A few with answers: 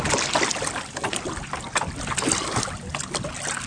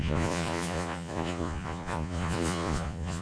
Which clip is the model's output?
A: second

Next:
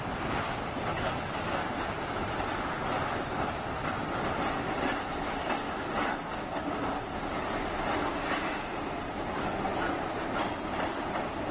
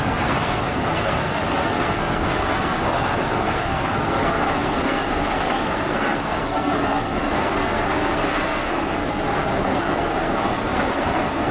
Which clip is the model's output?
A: second